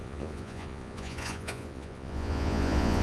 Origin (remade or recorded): remade